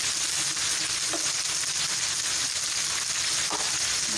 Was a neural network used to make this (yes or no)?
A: no